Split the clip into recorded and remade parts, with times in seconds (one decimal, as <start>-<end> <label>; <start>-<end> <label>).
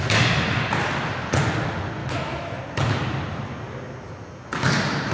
0.0-2.0 recorded; 2.0-2.6 remade; 2.6-5.1 recorded